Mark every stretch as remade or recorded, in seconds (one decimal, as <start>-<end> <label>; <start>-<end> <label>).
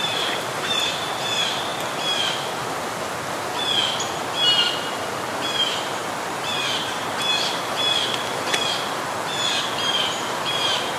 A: 0.0-1.7 remade; 1.7-5.4 recorded; 5.4-6.0 remade; 6.0-10.0 recorded; 10.0-11.0 remade